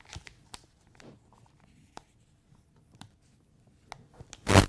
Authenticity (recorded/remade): recorded